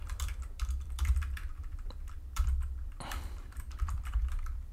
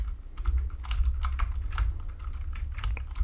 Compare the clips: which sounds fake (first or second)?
first